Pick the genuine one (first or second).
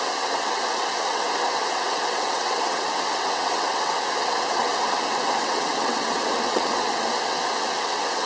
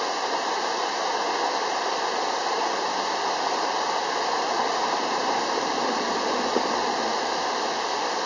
second